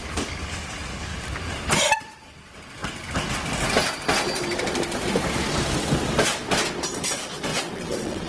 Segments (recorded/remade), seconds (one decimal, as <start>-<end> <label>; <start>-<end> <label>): 0.0-7.5 recorded; 7.5-8.3 remade

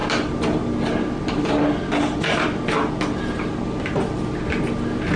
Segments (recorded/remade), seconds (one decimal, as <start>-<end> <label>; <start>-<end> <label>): 0.0-5.2 recorded

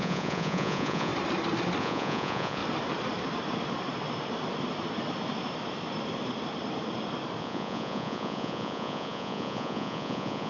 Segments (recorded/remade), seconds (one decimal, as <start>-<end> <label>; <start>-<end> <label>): 0.0-1.1 remade; 1.1-1.8 recorded; 1.8-2.6 remade; 2.6-7.4 recorded; 7.4-10.5 remade